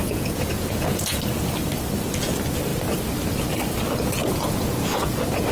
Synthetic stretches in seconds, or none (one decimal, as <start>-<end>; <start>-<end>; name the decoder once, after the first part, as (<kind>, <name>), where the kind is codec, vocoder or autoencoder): 0.0-1.2 (vocoder, Vocos); 4.2-4.8